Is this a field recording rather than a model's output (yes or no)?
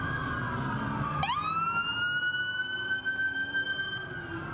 yes